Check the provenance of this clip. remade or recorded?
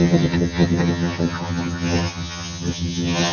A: remade